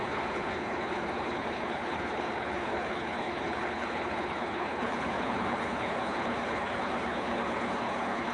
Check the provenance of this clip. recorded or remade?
remade